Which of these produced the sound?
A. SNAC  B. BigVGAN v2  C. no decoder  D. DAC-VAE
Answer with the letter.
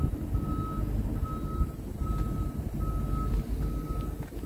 C